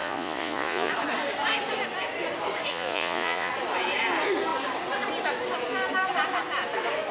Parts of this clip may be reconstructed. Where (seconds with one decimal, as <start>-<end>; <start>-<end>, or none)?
0.0-0.9; 2.7-3.5